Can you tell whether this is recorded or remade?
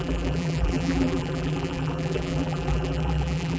remade